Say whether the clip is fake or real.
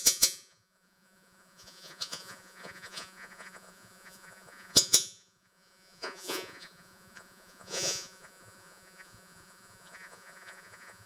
fake